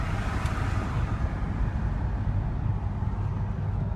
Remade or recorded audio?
recorded